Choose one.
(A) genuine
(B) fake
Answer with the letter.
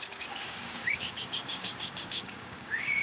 B